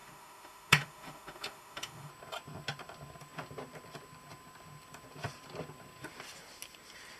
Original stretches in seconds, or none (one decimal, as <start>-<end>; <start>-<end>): 2.1-7.2